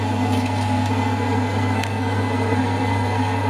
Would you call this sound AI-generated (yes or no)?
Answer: yes